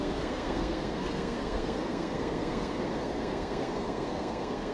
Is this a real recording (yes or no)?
no